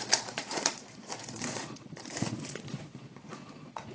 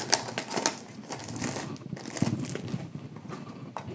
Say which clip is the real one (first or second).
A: second